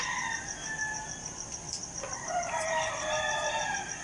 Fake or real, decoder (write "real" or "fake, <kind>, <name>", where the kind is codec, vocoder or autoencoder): fake, vocoder, BigVGAN v2